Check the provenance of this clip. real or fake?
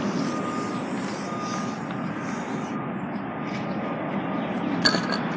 real